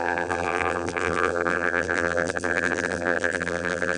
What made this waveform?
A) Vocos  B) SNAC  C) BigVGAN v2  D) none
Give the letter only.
C